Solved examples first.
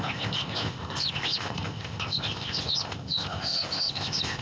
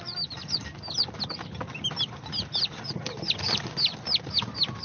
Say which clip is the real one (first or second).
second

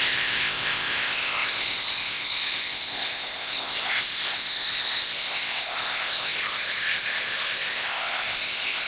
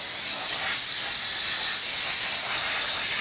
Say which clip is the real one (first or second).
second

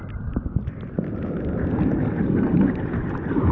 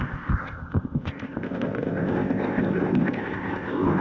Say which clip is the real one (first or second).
first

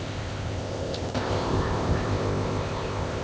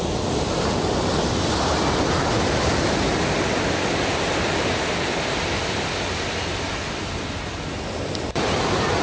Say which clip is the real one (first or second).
second